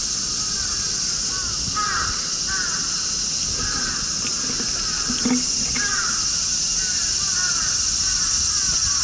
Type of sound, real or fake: real